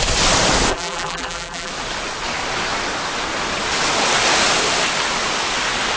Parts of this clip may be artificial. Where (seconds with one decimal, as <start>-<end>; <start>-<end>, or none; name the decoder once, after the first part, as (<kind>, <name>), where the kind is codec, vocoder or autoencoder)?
0.7-1.7 (vocoder, BigVGAN v2)